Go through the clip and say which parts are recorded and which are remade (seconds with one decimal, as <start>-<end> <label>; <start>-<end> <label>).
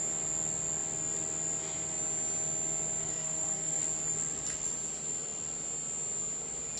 0.0-3.0 recorded; 3.0-3.8 remade; 3.8-6.8 recorded